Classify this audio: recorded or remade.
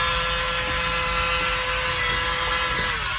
recorded